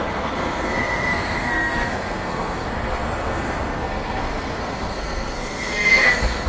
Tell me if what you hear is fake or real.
fake